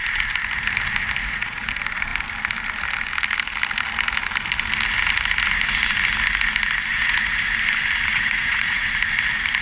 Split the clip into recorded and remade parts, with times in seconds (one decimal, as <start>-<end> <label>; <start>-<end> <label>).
0.0-1.2 recorded; 1.2-1.7 remade; 1.7-6.9 recorded; 6.9-7.4 remade; 7.4-8.1 recorded; 8.1-8.9 remade; 8.9-9.6 recorded